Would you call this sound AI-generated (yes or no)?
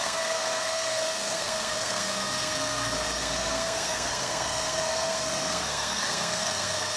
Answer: yes